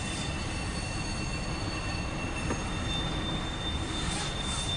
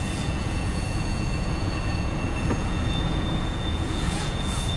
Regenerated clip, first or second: second